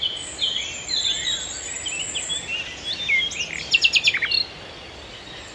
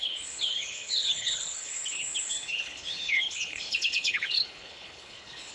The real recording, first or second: first